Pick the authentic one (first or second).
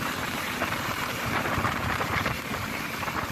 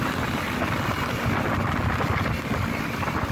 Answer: second